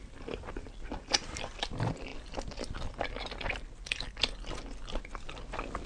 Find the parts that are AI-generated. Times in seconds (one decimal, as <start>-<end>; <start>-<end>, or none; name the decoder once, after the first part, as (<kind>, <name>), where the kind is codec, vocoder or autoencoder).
none